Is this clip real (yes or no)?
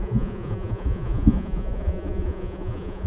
no